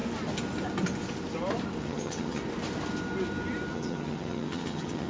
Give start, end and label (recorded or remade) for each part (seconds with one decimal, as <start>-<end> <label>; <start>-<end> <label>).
0.0-1.8 recorded; 1.8-2.4 remade; 2.4-3.7 recorded; 3.7-5.1 remade